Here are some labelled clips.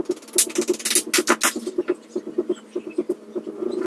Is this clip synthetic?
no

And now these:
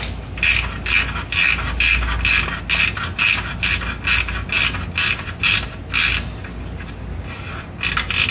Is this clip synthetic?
no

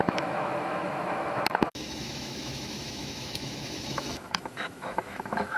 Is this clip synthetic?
yes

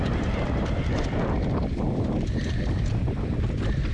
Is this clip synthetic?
yes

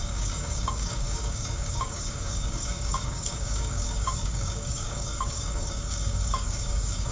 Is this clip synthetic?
yes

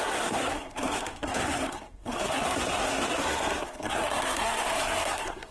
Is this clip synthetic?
yes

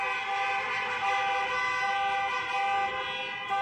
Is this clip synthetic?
no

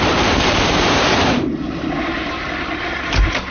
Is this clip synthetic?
yes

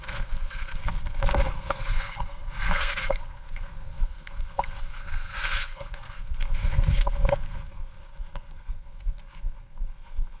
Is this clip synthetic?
yes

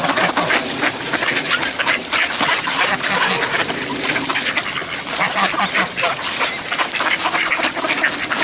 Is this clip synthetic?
no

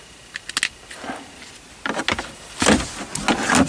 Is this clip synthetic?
no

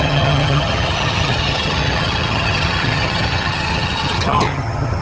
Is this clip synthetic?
yes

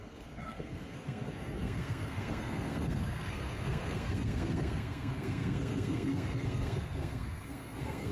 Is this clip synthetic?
yes